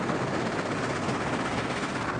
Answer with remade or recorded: recorded